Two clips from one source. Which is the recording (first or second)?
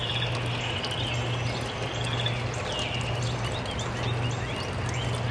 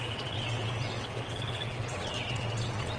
first